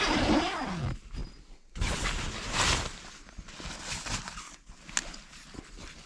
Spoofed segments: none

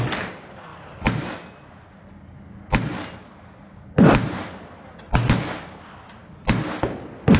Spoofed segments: none

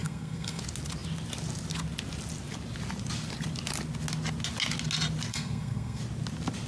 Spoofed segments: 0.0-0.6 (codec, SNAC); 5.3-6.0

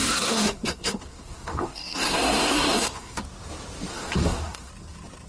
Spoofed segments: 0.0-3.2 (codec, SNAC); 3.9-4.7

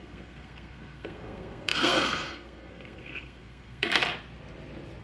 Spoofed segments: 0.0-4.0 (codec, SNAC)

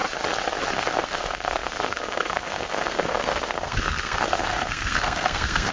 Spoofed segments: 0.7-5.7 (codec, SNAC)